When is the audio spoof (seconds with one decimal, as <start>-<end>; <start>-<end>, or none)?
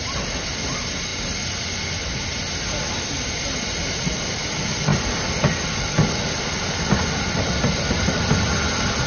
none